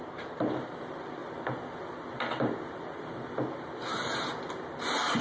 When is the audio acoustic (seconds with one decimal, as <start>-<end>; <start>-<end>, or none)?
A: 0.0-5.2